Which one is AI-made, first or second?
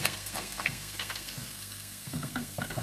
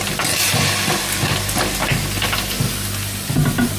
first